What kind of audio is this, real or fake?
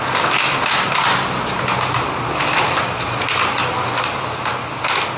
real